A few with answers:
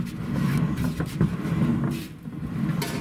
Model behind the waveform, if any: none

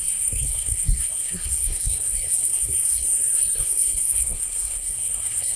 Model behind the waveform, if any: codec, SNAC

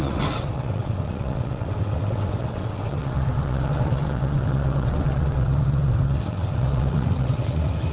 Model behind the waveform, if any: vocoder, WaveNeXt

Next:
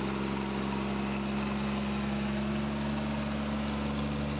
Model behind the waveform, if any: none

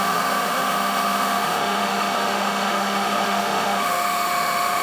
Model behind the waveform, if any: autoencoder, DAC-VAE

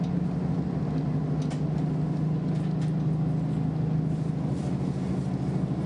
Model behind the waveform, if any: none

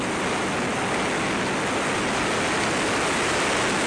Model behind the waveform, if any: none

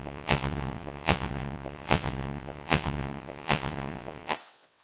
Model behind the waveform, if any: vocoder, WaveNeXt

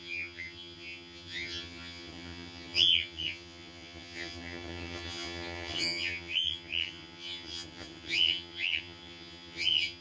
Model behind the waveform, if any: vocoder, HiFi-GAN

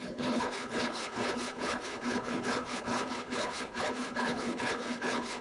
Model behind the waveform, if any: codec, HILCodec